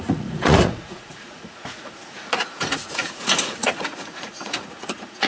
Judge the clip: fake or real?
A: fake